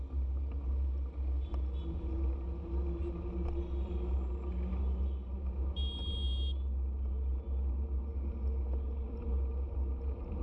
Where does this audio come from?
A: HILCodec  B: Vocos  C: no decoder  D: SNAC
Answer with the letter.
C